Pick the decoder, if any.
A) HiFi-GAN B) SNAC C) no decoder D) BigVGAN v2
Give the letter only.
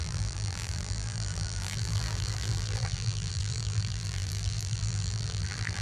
D